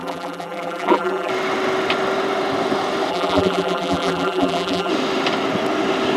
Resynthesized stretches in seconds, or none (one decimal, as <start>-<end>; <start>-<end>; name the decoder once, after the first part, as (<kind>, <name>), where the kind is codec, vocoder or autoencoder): 0.0-1.3 (vocoder, BigVGAN v2); 3.1-4.9